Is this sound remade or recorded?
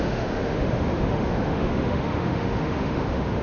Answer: remade